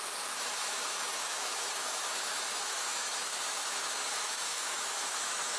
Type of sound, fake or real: fake